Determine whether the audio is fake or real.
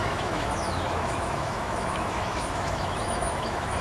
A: fake